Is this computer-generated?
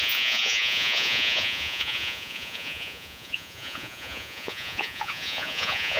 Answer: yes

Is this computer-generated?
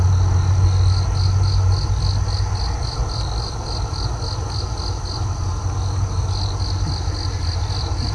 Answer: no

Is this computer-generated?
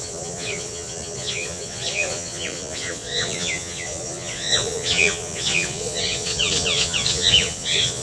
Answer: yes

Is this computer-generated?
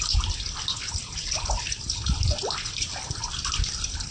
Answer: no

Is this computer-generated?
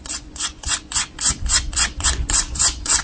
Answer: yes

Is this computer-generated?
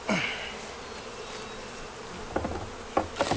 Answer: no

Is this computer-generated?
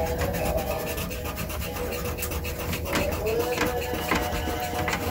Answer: no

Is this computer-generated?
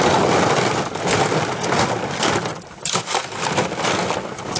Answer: no